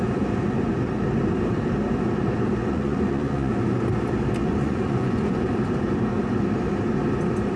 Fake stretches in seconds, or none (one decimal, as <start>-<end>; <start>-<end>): 2.6-3.5; 4.4-5.5